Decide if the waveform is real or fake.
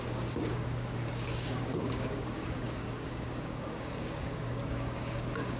fake